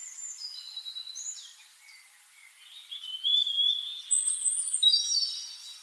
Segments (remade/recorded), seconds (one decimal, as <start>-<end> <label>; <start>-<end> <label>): 0.0-5.8 recorded